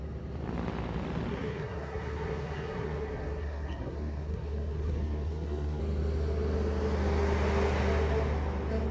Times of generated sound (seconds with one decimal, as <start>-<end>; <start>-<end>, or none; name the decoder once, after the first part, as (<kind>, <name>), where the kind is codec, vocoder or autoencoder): 1.3-5.8 (codec, SNAC)

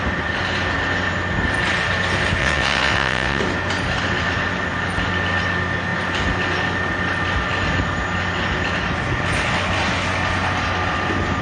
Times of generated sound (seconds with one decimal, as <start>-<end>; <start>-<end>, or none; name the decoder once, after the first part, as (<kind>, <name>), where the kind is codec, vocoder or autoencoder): 2.4-3.4 (vocoder, WaveNeXt)

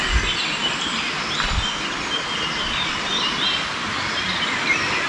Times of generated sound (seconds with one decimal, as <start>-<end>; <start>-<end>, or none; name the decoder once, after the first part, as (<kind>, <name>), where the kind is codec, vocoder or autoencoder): none

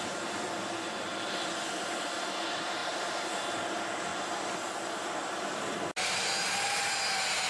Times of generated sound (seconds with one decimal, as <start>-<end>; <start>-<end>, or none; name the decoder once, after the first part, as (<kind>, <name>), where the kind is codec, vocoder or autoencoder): none

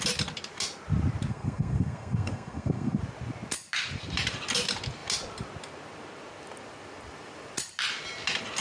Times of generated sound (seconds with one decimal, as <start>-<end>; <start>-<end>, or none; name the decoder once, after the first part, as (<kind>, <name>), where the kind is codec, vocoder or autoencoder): 1.3-3.0 (codec, SNAC)